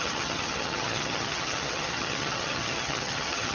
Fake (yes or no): yes